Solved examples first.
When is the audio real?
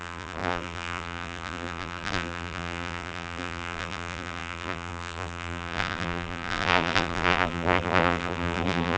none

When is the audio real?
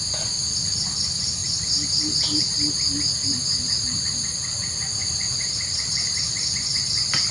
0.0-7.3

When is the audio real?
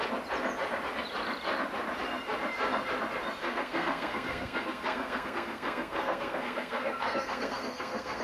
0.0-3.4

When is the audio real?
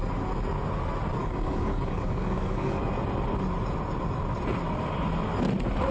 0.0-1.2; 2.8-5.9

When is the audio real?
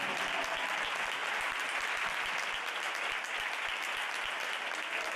0.0-5.2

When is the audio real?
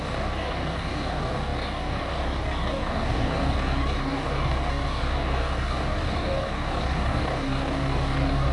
none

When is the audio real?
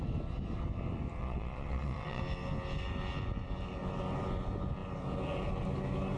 0.0-1.2; 2.2-6.2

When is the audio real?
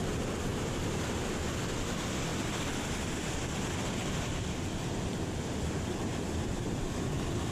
0.0-2.3; 6.8-7.5